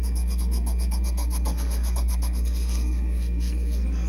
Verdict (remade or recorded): remade